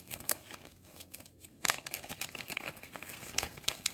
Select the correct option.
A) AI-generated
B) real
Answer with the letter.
A